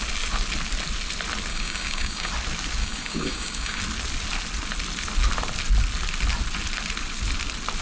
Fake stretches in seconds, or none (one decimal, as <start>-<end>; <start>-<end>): 1.5-2.3; 2.8-3.8